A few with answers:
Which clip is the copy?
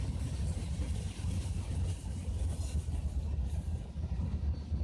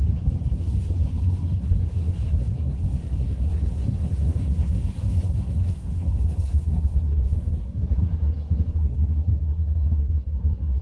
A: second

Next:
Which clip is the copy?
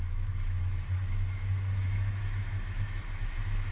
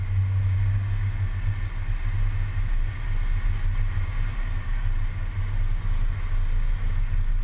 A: first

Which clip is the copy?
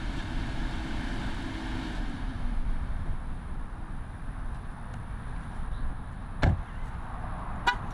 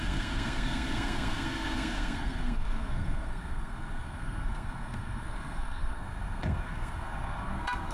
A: second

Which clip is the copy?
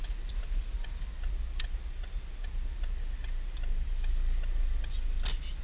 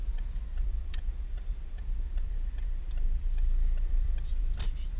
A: second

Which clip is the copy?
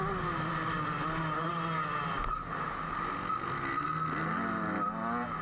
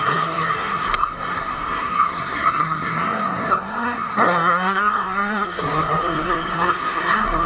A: second